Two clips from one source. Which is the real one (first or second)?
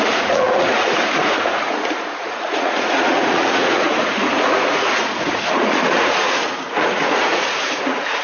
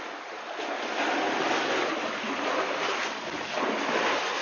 second